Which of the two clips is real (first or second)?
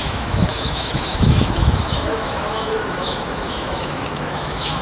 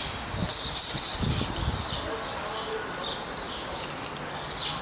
second